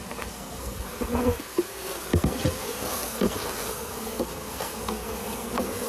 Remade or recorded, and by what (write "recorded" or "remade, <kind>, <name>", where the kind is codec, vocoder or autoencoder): remade, codec, SNAC